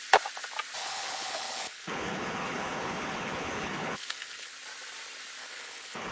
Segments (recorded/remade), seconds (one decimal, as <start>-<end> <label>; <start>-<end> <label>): 0.0-0.8 recorded; 0.8-4.5 remade; 4.5-5.4 recorded; 5.4-6.1 remade